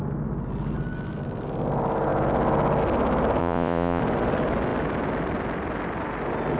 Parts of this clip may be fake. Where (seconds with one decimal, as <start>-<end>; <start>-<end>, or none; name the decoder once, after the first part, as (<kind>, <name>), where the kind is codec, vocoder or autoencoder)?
3.4-4.0 (vocoder, Vocos)